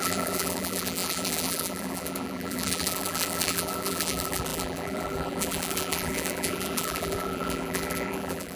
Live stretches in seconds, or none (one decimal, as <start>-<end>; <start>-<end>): none